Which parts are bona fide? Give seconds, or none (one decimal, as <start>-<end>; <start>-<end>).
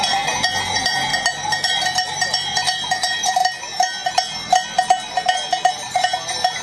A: 1.1-1.8; 3.4-5.7